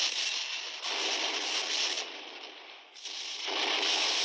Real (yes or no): yes